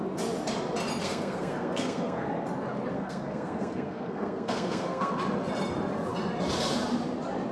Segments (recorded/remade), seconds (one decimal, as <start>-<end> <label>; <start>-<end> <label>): 0.0-1.0 recorded; 1.0-2.3 remade; 2.3-2.9 recorded; 2.9-5.1 remade; 5.1-7.5 recorded